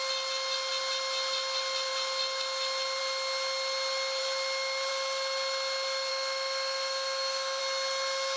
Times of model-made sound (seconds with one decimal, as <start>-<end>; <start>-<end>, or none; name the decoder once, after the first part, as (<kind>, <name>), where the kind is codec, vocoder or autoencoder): 6.1-7.6 (autoencoder, DAC-VAE)